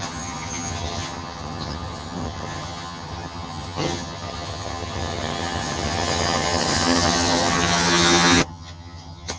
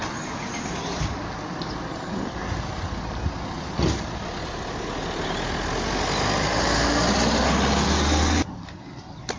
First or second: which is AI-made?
first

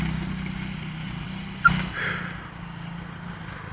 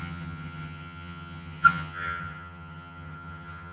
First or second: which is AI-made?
second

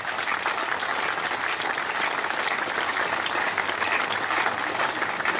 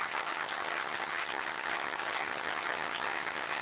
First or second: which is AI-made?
second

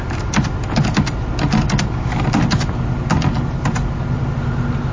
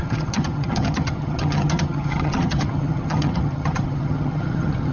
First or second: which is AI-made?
second